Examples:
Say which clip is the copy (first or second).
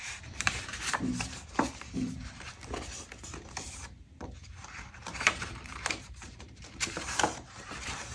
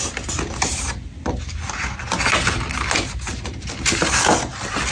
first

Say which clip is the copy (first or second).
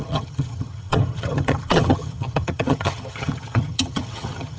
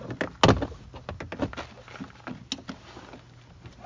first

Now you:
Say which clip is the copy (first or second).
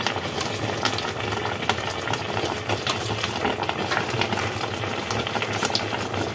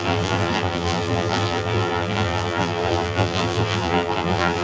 second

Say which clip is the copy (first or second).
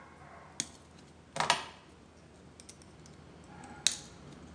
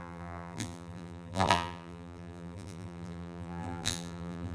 second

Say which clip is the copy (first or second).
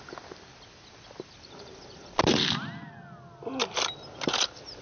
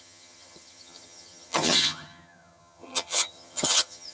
second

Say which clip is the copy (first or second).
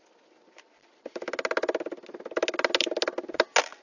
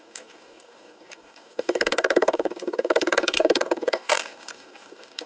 second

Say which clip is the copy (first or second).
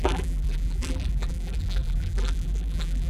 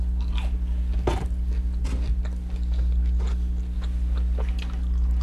first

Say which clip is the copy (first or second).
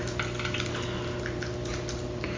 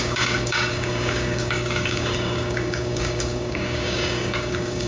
second